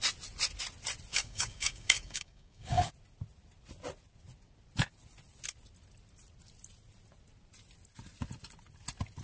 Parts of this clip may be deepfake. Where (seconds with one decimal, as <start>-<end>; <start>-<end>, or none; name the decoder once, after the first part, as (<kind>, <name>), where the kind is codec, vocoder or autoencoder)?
1.1-2.9 (codec, DAC)